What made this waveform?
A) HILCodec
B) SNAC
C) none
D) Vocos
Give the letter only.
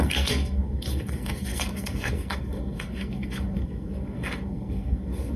B